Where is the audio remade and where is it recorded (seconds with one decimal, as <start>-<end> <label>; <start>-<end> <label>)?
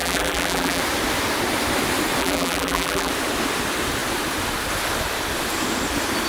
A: 0.0-0.8 remade; 0.8-2.2 recorded; 2.2-3.1 remade; 3.1-6.3 recorded